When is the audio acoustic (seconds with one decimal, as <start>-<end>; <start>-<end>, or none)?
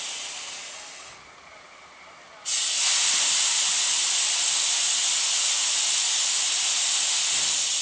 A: 0.0-7.8